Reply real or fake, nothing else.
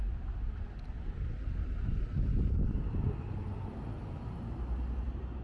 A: real